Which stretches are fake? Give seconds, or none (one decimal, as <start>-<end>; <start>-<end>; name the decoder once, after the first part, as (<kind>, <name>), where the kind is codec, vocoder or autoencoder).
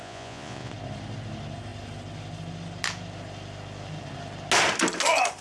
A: 0.0-0.7 (vocoder, Vocos)